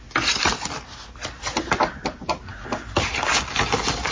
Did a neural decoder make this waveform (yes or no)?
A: no